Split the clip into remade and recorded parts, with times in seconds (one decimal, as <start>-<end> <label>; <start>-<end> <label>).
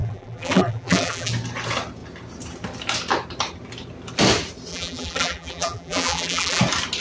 0.0-1.3 remade; 1.3-4.7 recorded; 4.7-6.6 remade; 6.6-7.0 recorded